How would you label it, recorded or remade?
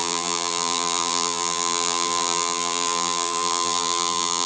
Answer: remade